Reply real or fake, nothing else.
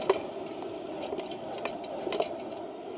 fake